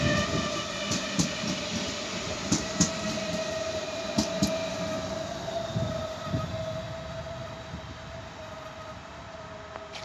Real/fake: real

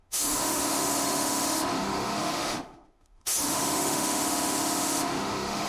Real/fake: fake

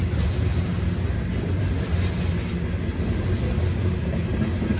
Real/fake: real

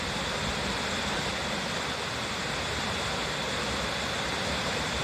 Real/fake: real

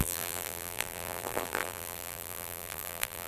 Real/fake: fake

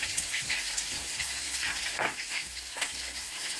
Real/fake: fake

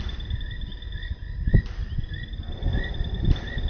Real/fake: real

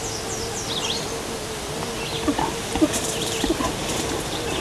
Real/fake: real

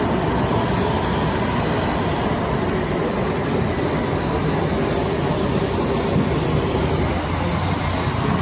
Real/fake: real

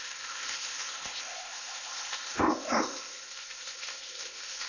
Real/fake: fake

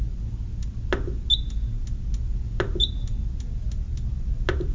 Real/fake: real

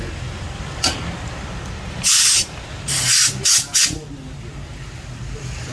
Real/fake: real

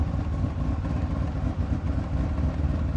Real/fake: real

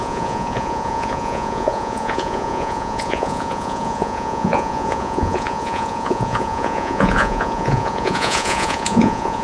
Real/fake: fake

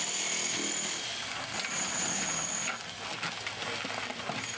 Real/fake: real